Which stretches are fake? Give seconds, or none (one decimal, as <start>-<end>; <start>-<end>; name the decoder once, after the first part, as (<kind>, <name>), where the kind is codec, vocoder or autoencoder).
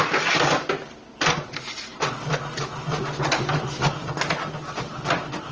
1.9-2.6 (vocoder, BigVGAN v2)